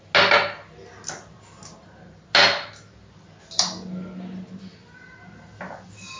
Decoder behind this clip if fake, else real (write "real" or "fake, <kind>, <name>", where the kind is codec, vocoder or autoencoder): real